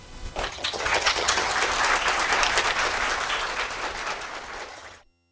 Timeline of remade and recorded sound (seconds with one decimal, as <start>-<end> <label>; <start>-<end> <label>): 0.0-0.5 recorded; 0.5-1.5 remade; 1.5-4.7 recorded; 4.7-5.3 remade